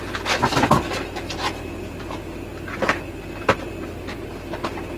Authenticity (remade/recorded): recorded